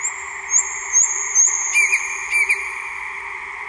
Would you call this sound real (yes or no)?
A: yes